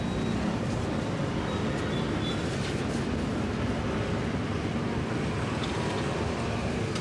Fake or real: real